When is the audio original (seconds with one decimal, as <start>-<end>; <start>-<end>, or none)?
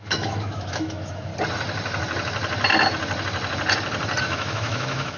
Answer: 1.3-4.2